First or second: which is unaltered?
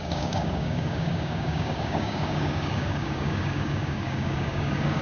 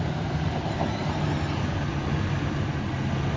second